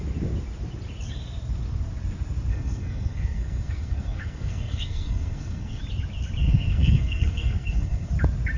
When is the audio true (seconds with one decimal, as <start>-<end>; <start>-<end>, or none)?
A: 0.0-2.5; 5.8-6.4; 8.1-8.6